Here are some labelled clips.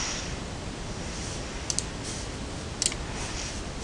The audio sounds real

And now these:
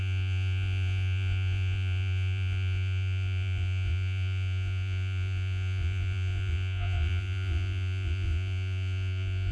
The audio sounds fake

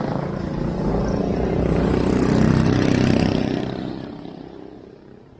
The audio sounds fake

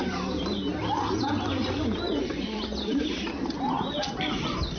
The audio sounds fake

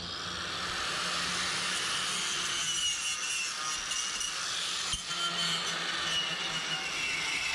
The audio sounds real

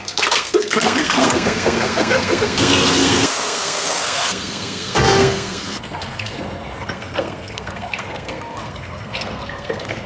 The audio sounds fake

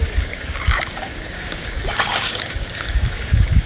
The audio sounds fake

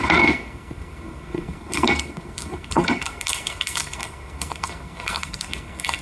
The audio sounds fake